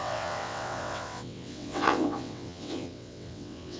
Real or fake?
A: fake